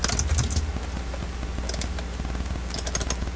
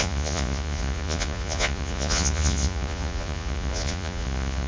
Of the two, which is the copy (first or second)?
second